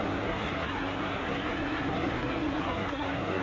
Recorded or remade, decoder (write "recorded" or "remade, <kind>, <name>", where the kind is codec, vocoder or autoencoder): remade, codec, SNAC